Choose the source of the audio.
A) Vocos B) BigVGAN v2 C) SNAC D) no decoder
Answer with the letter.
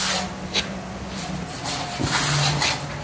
D